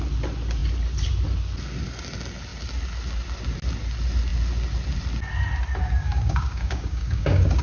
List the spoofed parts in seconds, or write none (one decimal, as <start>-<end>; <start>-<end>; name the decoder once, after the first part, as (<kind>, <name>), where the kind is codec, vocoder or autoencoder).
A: 6.0-7.6 (codec, DAC)

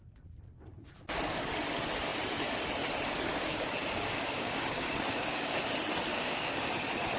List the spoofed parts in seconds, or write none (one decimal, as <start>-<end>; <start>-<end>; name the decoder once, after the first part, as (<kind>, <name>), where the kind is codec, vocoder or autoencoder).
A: 3.3-5.6 (codec, DAC); 6.1-6.7

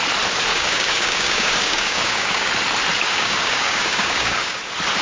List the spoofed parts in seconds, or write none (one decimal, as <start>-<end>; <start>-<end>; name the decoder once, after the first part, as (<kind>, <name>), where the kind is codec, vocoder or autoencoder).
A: 0.5-2.5 (codec, DAC); 3.0-4.6

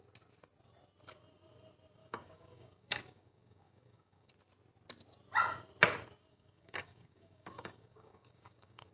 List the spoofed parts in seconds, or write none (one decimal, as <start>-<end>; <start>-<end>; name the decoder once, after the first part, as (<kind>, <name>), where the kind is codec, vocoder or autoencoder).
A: 2.0-4.3 (codec, DAC); 6.3-8.9

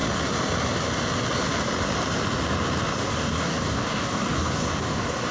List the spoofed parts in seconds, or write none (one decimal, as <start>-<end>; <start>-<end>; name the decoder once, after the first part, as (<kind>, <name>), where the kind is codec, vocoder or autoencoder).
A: 3.0-5.3 (codec, DAC)

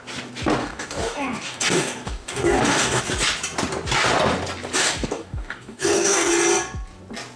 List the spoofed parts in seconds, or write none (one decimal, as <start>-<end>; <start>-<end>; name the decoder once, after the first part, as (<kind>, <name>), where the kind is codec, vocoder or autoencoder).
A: 0.6-3.0 (codec, DAC); 4.8-6.3